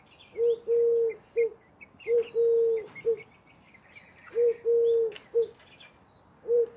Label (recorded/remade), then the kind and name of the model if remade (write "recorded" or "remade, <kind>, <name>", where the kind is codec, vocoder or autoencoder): recorded